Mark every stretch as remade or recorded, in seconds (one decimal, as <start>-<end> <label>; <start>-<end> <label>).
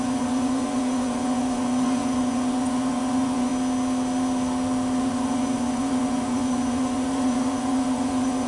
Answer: 0.0-3.5 remade; 3.5-5.0 recorded; 5.0-8.5 remade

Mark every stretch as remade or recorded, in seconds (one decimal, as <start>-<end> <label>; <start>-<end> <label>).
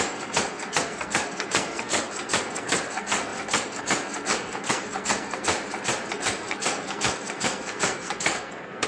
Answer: 0.0-5.5 remade; 5.5-6.1 recorded; 6.1-8.9 remade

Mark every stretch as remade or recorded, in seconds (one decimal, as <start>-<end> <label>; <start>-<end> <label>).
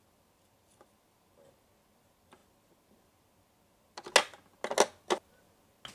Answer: 0.0-5.9 recorded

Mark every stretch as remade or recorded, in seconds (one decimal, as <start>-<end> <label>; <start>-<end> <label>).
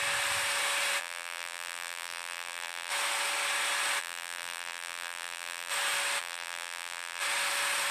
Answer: 0.0-1.0 recorded; 1.0-2.9 remade; 2.9-4.0 recorded; 4.0-5.7 remade; 5.7-6.2 recorded; 6.2-7.2 remade; 7.2-7.9 recorded